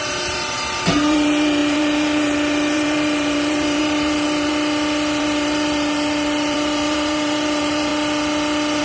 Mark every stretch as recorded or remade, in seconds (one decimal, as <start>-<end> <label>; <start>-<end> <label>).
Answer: 0.0-4.5 remade; 4.5-5.2 recorded; 5.2-7.9 remade; 7.9-8.8 recorded